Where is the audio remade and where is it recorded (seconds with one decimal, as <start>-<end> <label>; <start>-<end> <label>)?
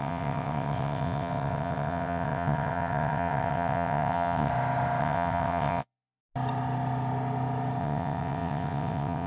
0.0-4.5 remade; 4.5-5.0 recorded; 5.0-6.2 remade; 6.2-7.8 recorded; 7.8-9.3 remade